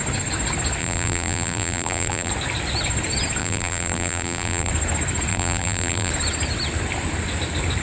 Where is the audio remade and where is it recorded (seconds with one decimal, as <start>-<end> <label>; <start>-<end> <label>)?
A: 0.0-0.8 recorded; 0.8-2.3 remade; 2.3-3.4 recorded; 3.4-4.7 remade; 4.7-5.3 recorded; 5.3-6.1 remade; 6.1-7.8 recorded